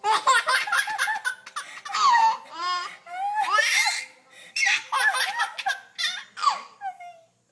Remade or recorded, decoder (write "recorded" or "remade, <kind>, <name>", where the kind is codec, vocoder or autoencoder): recorded